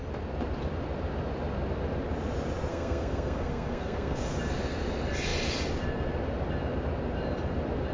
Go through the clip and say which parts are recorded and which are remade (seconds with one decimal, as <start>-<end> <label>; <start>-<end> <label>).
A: 0.0-2.7 recorded; 2.7-4.3 remade; 4.3-7.9 recorded